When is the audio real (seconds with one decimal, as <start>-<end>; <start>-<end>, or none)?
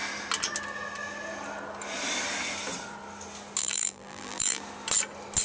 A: 0.0-3.6; 4.6-5.4